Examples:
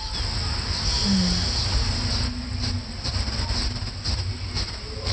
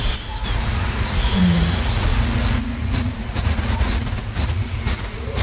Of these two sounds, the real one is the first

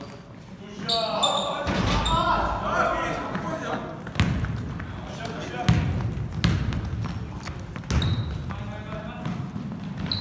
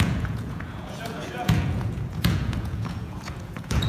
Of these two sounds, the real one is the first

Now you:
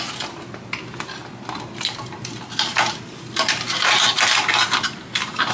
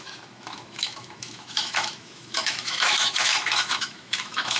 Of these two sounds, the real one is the first